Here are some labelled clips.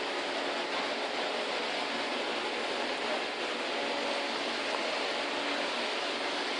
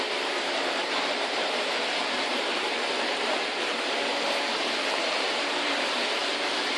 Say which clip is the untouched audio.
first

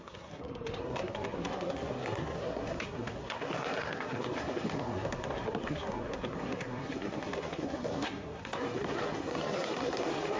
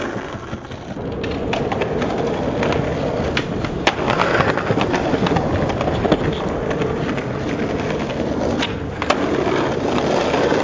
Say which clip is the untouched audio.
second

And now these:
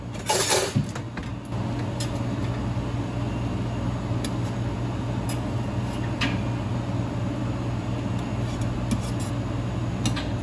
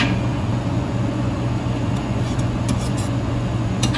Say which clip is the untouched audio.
first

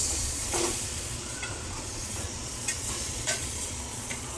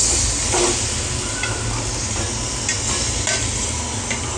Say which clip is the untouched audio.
second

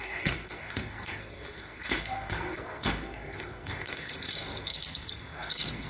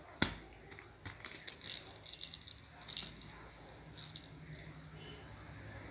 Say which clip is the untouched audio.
second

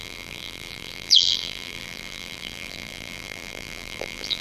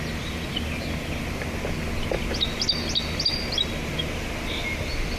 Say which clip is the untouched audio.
second